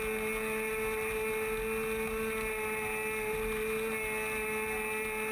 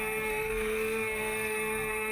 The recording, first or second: first